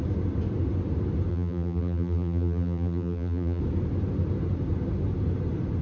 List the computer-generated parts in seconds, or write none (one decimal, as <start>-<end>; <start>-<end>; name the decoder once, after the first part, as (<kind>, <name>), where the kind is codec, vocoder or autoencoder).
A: 1.3-3.6 (vocoder, BigVGAN v2)